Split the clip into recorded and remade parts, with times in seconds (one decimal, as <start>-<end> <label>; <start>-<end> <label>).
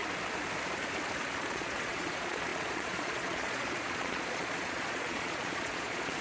0.0-1.4 recorded; 1.4-6.2 remade